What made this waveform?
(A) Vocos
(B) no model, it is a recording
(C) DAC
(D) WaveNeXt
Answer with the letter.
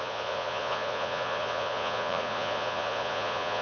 A